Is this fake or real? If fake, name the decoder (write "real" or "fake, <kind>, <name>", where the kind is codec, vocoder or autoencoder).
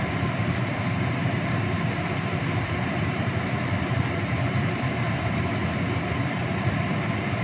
fake, vocoder, BigVGAN v2